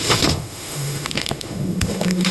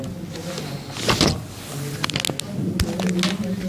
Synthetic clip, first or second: first